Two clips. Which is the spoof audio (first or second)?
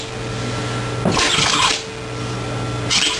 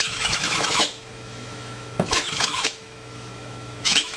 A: second